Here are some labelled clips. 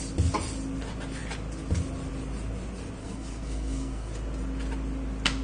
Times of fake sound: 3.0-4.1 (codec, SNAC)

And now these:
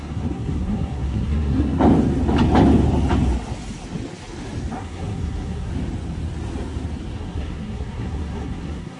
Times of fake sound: 0.0-1.8 (codec, SNAC); 4.8-5.7; 7.2-9.0

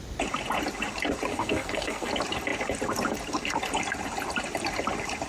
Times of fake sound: 1.3-2.1 (codec, SNAC)

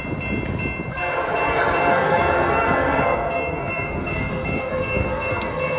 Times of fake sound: 1.9-5.8 (codec, SNAC)